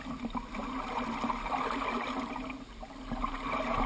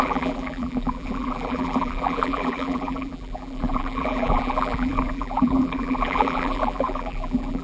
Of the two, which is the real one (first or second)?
first